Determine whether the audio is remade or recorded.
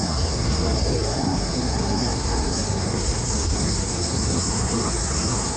remade